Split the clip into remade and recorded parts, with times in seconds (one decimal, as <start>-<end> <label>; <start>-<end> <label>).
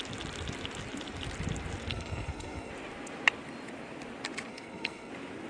0.0-1.9 recorded; 1.9-2.7 remade; 2.7-4.5 recorded; 4.5-5.1 remade; 5.1-5.5 recorded